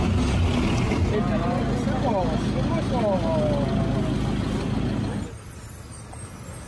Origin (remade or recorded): recorded